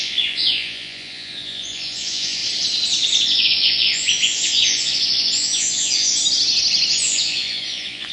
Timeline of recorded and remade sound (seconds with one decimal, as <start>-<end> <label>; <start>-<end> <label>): 0.0-2.4 remade; 2.4-3.2 recorded; 3.2-6.2 remade; 6.2-6.9 recorded; 6.9-8.1 remade